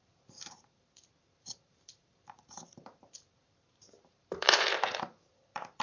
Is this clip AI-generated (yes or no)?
yes